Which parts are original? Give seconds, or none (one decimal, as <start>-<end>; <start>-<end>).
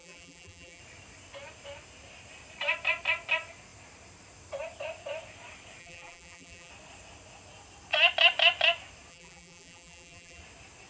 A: 0.8-5.8; 6.7-9.1; 10.4-10.9